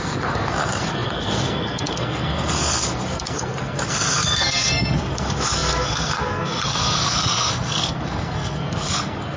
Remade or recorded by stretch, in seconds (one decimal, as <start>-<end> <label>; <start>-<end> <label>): 0.0-9.4 remade